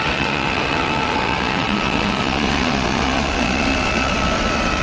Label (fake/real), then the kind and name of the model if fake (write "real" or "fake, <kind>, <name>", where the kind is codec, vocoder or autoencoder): fake, vocoder, WaveNeXt